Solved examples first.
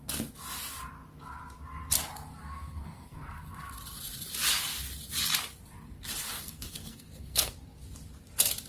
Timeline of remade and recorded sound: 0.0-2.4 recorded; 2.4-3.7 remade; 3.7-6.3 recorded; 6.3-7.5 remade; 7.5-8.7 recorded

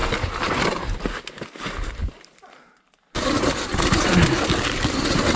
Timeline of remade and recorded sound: 0.0-2.0 recorded; 2.0-2.7 remade; 2.7-5.4 recorded

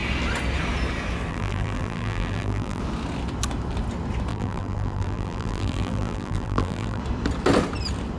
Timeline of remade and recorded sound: 0.0-1.3 recorded; 1.3-2.8 remade; 2.8-4.3 recorded; 4.3-7.0 remade; 7.0-8.2 recorded

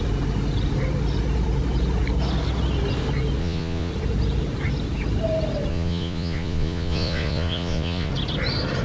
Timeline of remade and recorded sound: 0.0-3.4 recorded; 3.4-3.9 remade; 3.9-5.7 recorded; 5.7-8.1 remade; 8.1-8.8 recorded